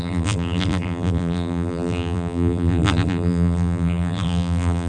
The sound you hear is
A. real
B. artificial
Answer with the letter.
B